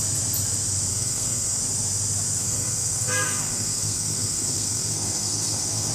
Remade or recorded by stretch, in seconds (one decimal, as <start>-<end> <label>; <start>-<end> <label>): 0.0-0.9 recorded; 0.9-1.6 remade; 1.6-2.4 recorded; 2.4-5.9 remade